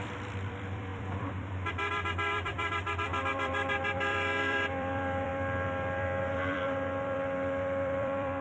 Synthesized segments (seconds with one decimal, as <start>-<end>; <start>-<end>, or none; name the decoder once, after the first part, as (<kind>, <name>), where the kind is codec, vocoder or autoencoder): 0.0-8.4 (vocoder, BigVGAN v2)